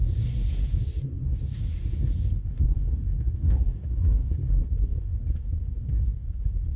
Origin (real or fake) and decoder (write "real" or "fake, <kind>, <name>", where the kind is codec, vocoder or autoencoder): fake, codec, SNAC